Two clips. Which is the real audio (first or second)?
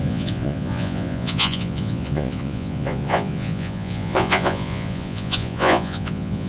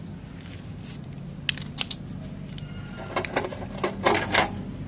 second